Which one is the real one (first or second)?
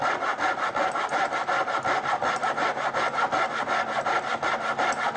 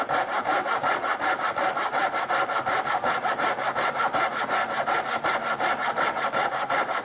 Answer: first